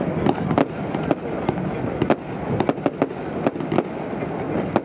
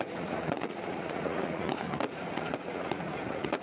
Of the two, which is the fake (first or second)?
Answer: second